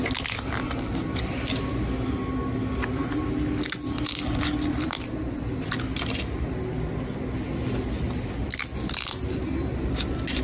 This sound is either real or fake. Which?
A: real